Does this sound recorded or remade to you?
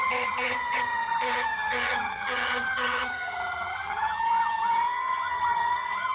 remade